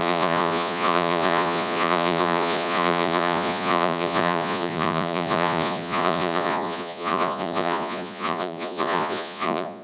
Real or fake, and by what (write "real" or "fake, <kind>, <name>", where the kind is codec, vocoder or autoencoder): fake, vocoder, Vocos